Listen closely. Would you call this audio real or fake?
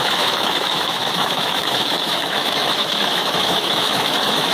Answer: fake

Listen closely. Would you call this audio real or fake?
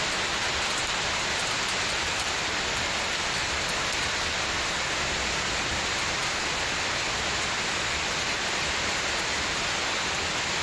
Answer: real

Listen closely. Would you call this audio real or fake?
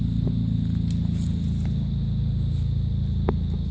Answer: real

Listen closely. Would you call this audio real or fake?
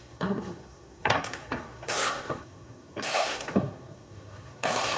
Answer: fake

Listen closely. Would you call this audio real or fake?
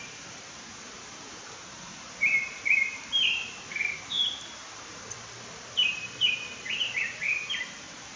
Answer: fake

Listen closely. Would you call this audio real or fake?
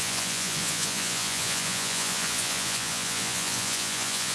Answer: fake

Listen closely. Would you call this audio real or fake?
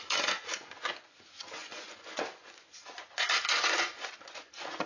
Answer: fake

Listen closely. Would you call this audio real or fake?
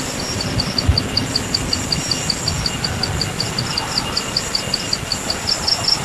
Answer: real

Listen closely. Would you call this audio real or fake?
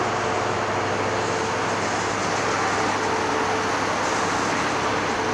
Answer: real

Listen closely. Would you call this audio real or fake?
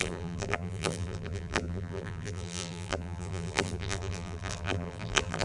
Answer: fake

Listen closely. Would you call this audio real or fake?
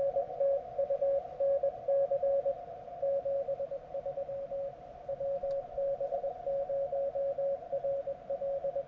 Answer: real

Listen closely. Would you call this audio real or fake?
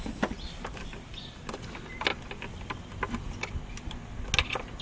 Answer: real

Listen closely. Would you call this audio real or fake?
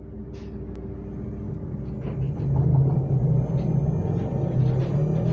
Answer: real